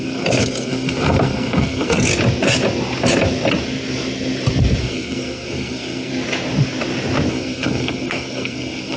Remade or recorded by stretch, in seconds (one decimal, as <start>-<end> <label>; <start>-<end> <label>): 0.0-2.1 remade; 2.1-4.8 recorded; 4.8-6.1 remade; 6.1-7.3 recorded; 7.3-9.0 remade